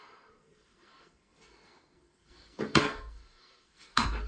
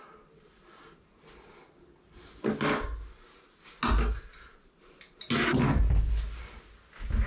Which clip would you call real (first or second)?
second